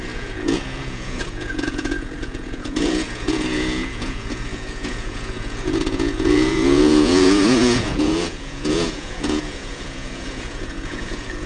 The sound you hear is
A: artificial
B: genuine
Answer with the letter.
A